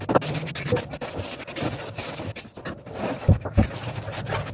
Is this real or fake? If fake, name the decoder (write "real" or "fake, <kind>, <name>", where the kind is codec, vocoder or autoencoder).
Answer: real